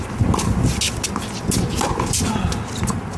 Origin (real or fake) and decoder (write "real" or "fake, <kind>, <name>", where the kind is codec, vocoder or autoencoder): real